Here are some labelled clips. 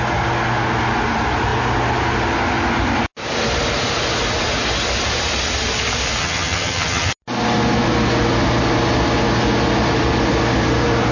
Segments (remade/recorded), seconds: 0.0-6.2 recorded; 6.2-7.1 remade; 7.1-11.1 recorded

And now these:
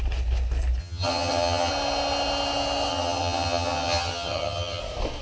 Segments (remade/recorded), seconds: 0.0-0.8 recorded; 0.8-1.7 remade; 1.7-2.9 recorded; 2.9-4.8 remade; 4.8-5.2 recorded

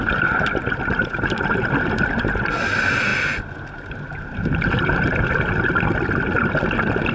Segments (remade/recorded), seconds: 0.0-7.1 recorded